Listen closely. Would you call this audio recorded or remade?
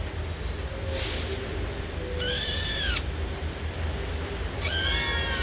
recorded